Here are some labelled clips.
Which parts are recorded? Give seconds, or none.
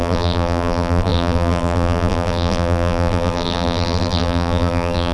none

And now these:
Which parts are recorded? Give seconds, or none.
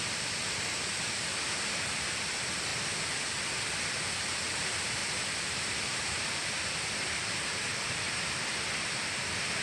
0.0-5.0; 8.2-9.6